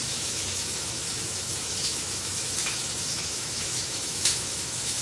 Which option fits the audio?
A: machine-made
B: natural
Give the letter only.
A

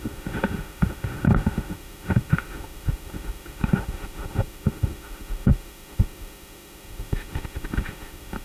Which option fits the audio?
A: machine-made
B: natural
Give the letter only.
A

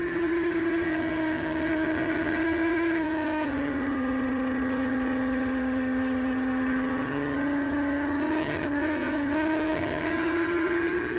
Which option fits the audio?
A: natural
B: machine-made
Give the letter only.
B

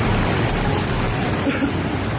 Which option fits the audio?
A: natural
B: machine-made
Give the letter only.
A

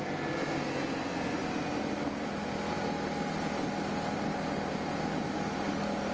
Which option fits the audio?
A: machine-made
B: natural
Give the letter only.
B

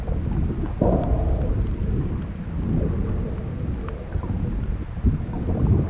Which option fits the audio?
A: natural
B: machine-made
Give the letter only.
A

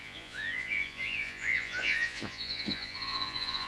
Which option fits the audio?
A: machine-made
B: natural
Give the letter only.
A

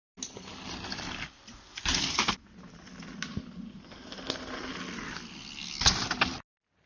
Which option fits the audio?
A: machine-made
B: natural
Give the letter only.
B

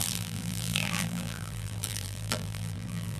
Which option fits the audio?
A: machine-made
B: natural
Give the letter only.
A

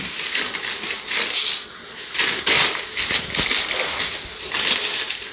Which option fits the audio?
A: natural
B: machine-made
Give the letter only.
A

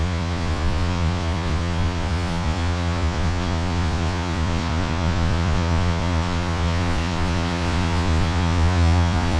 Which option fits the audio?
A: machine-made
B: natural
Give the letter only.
A